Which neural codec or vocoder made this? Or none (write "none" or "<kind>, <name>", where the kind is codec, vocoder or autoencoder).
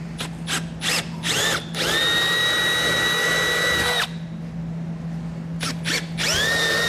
none